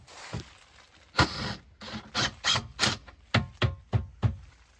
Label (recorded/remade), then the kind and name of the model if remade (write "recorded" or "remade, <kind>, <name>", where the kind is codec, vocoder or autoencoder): recorded